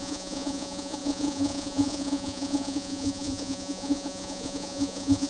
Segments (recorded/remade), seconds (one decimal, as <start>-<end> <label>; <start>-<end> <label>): 0.0-5.3 remade